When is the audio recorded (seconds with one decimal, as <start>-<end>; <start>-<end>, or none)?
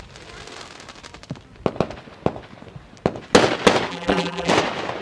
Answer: 0.0-3.9; 4.5-5.0